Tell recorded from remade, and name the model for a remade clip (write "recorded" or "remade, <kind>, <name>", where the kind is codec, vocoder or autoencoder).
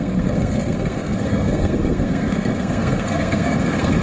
remade, codec, SNAC